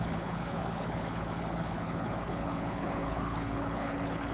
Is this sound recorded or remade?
remade